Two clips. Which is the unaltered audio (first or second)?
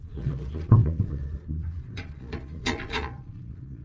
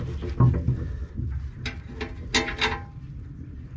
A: second